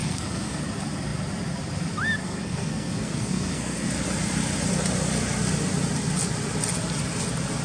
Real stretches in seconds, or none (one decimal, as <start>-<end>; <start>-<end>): 0.6-2.2; 3.9-7.6